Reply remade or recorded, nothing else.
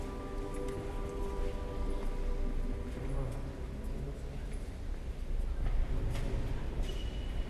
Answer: recorded